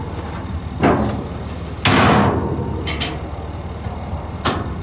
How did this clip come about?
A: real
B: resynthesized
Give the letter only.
A